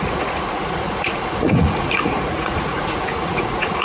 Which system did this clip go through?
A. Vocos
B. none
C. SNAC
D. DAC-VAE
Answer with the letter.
A